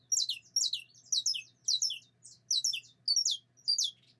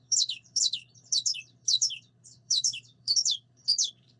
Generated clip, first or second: second